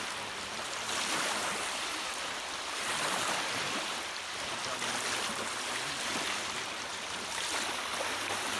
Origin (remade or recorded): remade